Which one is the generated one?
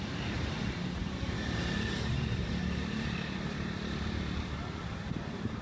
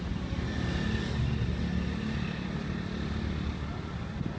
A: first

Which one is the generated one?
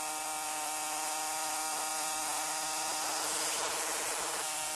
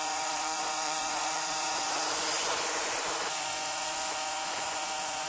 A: second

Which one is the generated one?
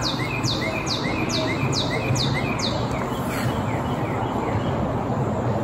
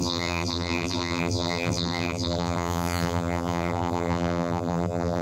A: second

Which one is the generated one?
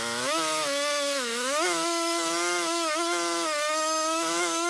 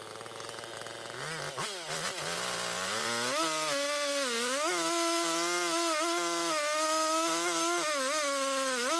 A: first